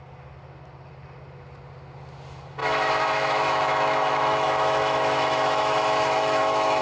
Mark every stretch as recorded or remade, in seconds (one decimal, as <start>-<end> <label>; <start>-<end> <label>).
0.0-2.6 recorded; 2.6-6.8 remade